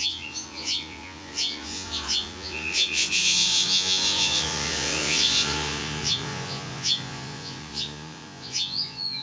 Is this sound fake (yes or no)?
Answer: yes